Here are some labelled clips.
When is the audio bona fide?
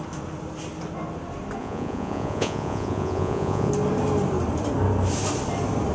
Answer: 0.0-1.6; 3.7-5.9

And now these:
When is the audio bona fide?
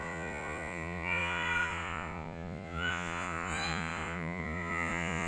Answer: none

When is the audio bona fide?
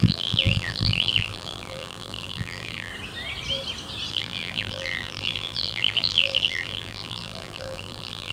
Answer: 2.9-4.1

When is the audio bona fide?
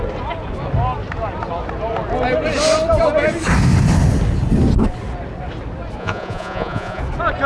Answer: 0.0-6.0; 7.0-7.5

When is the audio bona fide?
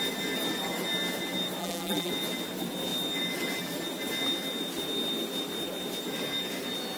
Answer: 0.0-1.6; 2.1-7.0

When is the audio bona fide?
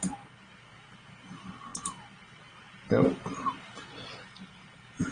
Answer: 0.0-5.1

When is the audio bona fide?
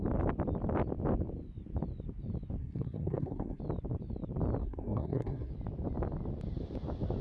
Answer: 0.0-2.6; 3.6-4.6; 5.5-7.2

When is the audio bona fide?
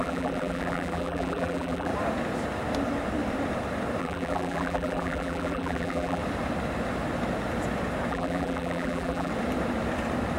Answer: 1.9-4.0; 6.2-8.1; 9.3-10.4